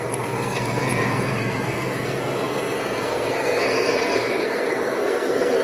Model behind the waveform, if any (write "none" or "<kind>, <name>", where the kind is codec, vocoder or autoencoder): codec, SNAC